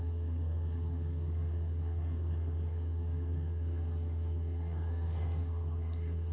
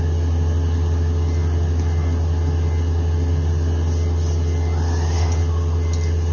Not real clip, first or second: first